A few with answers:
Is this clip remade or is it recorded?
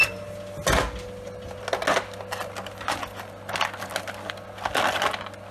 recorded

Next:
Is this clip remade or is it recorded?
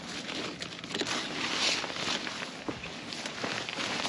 recorded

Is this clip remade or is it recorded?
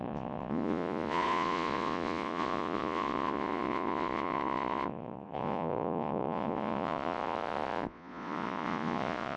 remade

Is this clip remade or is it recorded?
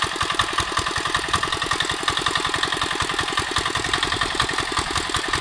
recorded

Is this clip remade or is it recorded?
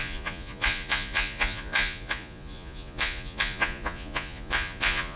remade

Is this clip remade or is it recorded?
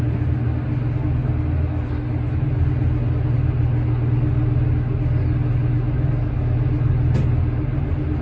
recorded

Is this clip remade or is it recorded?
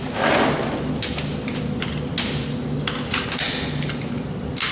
recorded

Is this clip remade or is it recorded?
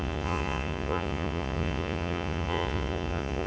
remade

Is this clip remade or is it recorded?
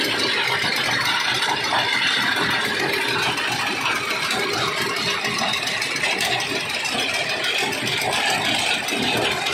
recorded